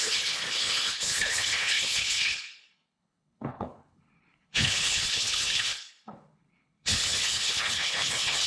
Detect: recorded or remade remade